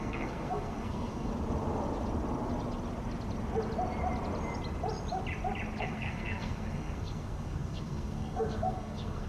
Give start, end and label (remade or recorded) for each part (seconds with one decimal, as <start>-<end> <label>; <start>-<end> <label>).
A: 0.0-1.3 remade; 1.3-5.8 recorded; 5.8-9.3 remade